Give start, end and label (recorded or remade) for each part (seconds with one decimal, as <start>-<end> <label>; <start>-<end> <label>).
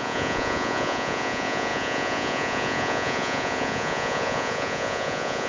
0.0-5.5 remade